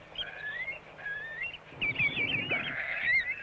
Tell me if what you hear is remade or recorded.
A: recorded